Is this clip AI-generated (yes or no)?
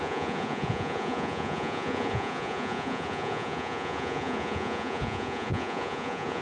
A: yes